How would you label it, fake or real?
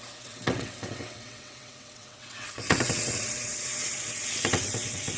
fake